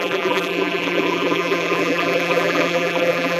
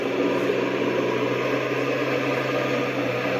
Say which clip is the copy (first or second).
first